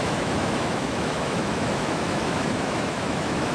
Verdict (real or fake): fake